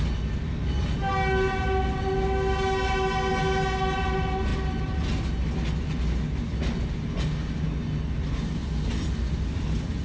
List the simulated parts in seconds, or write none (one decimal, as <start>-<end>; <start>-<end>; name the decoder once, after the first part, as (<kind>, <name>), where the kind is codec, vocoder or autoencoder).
none